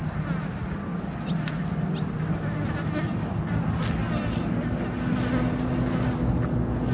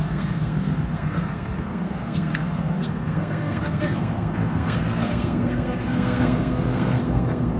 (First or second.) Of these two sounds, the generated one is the second